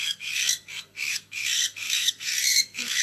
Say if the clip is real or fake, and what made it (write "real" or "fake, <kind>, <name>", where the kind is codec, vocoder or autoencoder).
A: fake, codec, SNAC